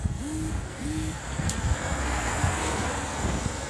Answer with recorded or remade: remade